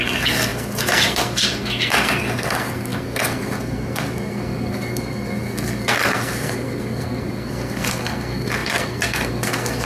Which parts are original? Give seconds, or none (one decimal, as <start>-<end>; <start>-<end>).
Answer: none